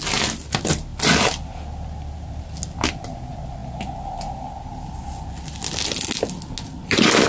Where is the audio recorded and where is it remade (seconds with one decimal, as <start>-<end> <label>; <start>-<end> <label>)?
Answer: 0.0-7.3 recorded